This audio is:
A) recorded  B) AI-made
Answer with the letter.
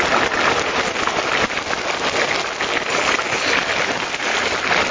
A